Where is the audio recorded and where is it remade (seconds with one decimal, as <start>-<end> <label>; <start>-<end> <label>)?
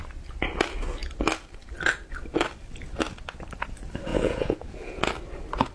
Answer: 0.0-4.1 recorded; 4.1-5.0 remade; 5.0-5.7 recorded